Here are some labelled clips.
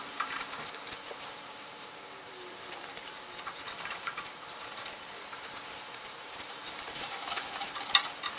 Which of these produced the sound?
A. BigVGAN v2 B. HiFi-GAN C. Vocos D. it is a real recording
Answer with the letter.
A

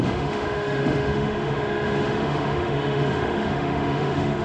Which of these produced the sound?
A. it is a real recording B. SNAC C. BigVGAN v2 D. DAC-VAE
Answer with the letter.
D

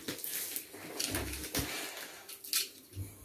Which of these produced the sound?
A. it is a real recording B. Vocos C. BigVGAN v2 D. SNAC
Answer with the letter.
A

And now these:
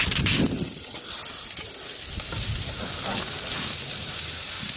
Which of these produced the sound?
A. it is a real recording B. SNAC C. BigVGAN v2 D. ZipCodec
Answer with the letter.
A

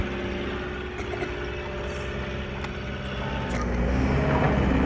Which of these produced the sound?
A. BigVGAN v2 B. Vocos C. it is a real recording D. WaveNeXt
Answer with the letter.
C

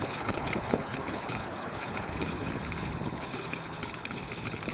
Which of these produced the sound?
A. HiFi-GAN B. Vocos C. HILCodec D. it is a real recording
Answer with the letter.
C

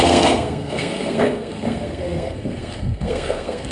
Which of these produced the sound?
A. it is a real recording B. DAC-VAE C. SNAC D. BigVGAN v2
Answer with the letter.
C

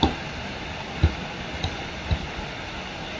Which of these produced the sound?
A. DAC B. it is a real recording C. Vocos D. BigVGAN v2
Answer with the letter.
B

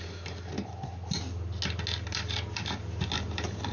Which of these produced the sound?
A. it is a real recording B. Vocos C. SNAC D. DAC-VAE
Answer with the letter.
A